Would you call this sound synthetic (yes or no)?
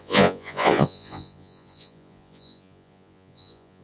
yes